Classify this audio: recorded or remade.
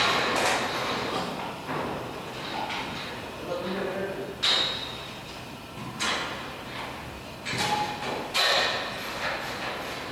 recorded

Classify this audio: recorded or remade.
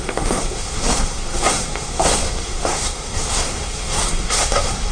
remade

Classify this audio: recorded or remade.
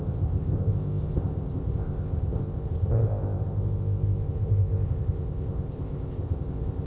remade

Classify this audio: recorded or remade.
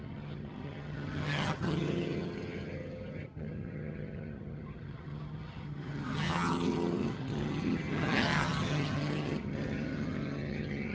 remade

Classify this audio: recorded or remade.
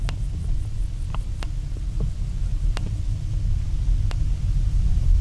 recorded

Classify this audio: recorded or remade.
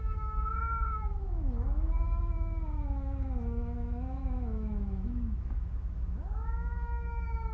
remade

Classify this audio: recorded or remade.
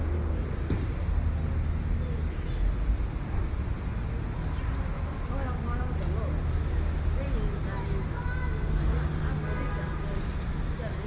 recorded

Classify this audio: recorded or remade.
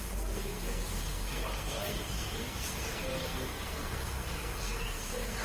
remade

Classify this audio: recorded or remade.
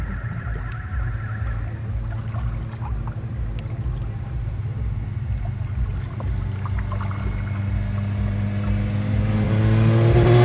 recorded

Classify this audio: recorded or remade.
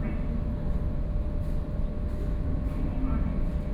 recorded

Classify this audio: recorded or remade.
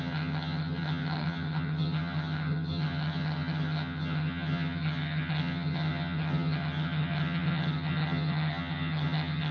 remade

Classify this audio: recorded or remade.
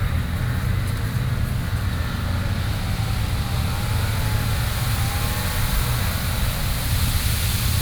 recorded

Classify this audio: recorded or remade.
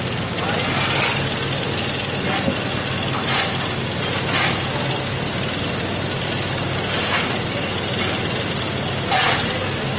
recorded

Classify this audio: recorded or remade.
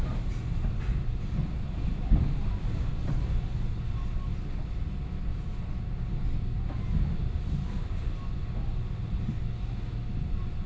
recorded